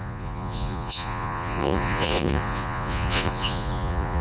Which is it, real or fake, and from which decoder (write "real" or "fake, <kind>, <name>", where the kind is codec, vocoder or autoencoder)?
fake, vocoder, Vocos